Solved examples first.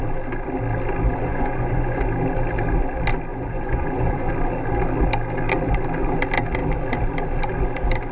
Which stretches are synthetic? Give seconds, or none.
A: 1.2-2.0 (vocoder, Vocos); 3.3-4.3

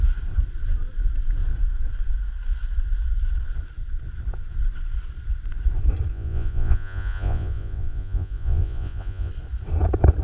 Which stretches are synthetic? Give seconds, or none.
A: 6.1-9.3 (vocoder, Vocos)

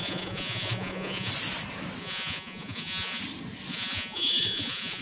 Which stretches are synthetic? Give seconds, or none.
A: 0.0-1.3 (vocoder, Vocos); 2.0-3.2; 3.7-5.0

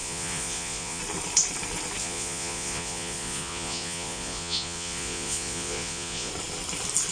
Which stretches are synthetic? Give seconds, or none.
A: 0.0-1.0 (vocoder, Vocos); 2.0-6.3

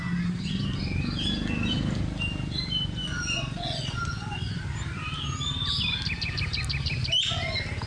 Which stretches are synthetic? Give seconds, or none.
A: 3.0-4.6 (vocoder, Vocos)

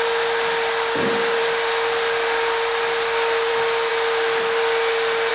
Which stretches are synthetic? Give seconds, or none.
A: none